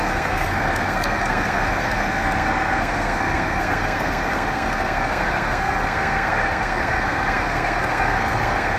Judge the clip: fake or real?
fake